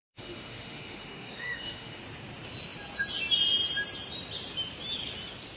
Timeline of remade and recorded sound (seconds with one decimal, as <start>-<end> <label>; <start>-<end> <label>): 0.0-2.0 remade; 2.0-5.6 recorded